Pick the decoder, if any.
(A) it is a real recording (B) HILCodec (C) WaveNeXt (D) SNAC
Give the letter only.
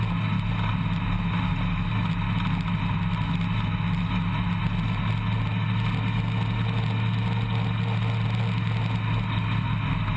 A